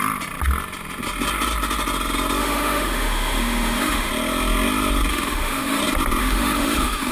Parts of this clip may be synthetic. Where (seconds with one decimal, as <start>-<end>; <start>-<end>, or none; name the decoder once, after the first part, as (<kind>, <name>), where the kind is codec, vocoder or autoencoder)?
2.4-4.1 (autoencoder, DAC-VAE); 5.1-5.8; 6.2-7.1